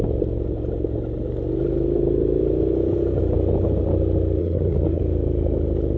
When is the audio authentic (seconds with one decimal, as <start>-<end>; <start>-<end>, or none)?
0.0-4.4; 5.0-6.0